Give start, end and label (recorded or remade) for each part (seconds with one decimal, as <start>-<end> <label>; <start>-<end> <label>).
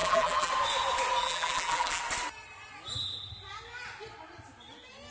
0.0-0.5 remade; 0.5-1.2 recorded; 1.2-2.0 remade; 2.0-5.1 recorded